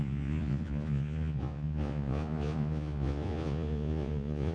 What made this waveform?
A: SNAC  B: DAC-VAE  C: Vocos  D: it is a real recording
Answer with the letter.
C